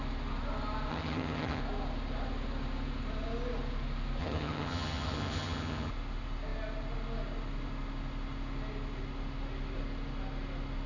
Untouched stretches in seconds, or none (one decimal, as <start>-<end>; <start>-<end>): 0.0-0.9; 1.6-4.2; 5.9-10.9